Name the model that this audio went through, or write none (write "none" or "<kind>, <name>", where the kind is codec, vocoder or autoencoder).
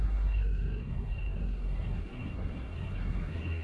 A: codec, SNAC